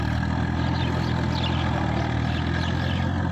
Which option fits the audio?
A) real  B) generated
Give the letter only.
A